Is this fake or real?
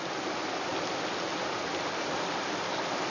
real